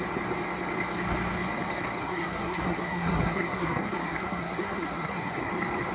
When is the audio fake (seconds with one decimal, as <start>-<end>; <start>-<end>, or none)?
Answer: 2.0-5.5